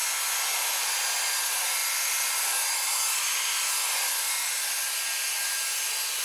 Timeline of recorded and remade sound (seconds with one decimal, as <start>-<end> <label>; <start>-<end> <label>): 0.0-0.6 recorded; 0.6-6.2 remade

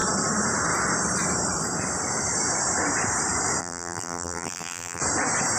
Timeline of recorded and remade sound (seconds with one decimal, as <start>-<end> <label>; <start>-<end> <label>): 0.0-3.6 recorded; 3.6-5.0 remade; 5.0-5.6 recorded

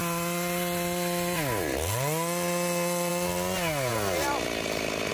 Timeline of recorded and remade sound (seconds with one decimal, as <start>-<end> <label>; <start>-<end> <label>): 0.0-5.1 recorded

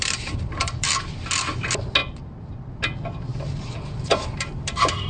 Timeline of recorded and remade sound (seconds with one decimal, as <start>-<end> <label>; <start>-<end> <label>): 0.0-0.9 remade; 0.9-3.3 recorded; 3.3-5.1 remade

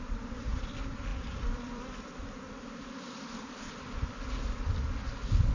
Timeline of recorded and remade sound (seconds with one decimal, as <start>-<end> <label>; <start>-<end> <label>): 0.0-1.1 recorded; 1.1-2.7 remade; 2.7-5.5 recorded